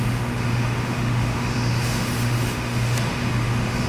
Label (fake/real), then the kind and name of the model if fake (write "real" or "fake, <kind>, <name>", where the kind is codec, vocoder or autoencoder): fake, autoencoder, DAC-VAE